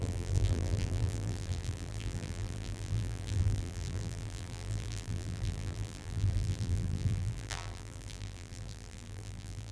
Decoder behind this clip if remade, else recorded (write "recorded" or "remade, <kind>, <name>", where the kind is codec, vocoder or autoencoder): remade, vocoder, BigVGAN v2